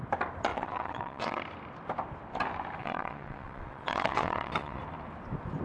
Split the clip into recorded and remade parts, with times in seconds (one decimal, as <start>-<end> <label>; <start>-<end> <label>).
0.0-0.5 recorded; 0.5-1.4 remade; 1.4-2.8 recorded; 2.8-4.8 remade; 4.8-5.6 recorded